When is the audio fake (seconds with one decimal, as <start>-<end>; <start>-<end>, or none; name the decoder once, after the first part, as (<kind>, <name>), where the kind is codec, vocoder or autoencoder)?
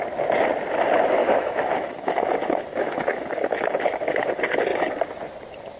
1.2-4.3 (autoencoder, DAC-VAE)